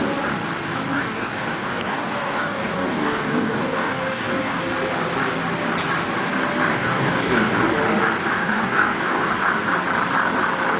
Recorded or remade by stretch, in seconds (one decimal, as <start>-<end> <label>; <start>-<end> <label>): 0.0-0.9 recorded; 0.9-4.6 remade; 4.6-6.7 recorded; 6.7-7.5 remade; 7.5-8.4 recorded; 8.4-9.3 remade; 9.3-10.8 recorded

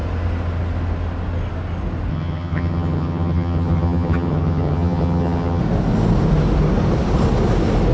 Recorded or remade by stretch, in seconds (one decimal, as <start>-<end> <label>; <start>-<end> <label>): 0.0-2.1 recorded; 2.1-5.6 remade; 5.6-7.9 recorded